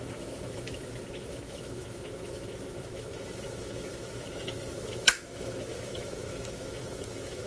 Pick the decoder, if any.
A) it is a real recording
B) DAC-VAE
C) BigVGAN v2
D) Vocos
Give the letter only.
B